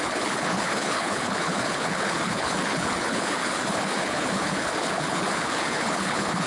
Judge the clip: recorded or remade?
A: remade